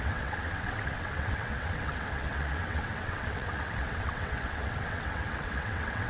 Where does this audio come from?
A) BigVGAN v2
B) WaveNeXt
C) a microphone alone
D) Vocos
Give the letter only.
B